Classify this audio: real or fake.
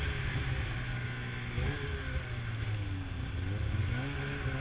real